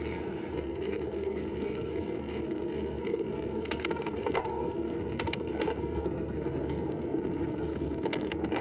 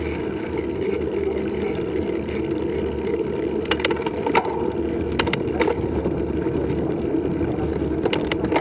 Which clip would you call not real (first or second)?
first